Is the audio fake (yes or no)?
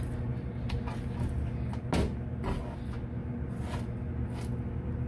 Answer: no